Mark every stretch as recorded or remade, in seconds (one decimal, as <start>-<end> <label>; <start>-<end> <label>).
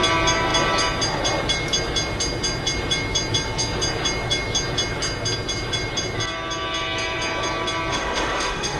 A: 0.0-7.9 recorded; 7.9-8.8 remade